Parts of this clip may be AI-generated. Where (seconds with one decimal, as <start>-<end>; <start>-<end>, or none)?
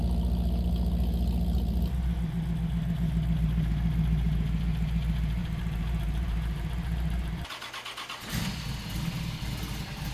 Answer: 5.4-7.5